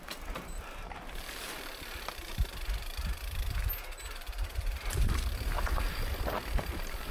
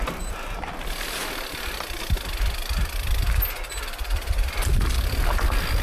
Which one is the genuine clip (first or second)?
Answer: second